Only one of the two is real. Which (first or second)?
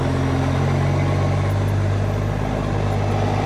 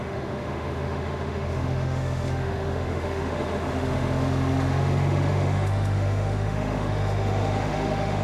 first